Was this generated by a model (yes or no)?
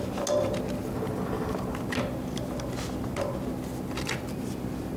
no